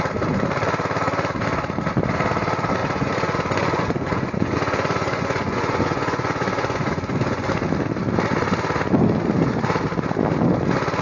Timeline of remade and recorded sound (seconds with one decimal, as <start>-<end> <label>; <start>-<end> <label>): 0.0-2.8 recorded; 2.8-7.5 remade; 7.5-11.0 recorded